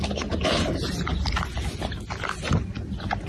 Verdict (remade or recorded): recorded